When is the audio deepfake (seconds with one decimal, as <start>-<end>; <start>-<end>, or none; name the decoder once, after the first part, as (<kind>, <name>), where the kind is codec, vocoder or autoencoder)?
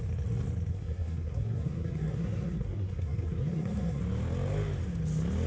0.7-4.0 (codec, SNAC)